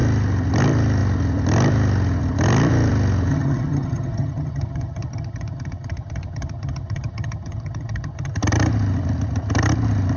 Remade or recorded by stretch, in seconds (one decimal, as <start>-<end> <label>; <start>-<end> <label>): 0.0-3.3 recorded; 3.3-8.3 remade; 8.3-10.2 recorded